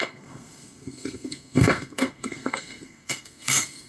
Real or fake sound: fake